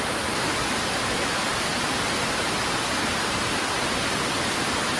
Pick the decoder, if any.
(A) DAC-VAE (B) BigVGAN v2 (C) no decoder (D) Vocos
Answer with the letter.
C